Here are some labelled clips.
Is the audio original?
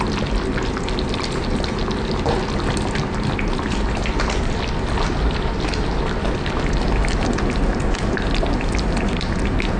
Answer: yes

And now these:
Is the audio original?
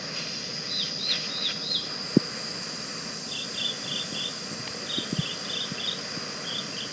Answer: yes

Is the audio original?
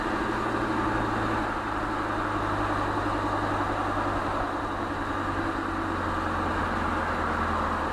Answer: yes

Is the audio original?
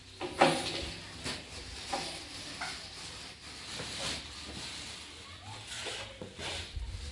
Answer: yes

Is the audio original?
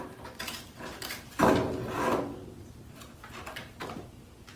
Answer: yes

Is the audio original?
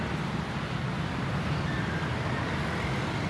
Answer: yes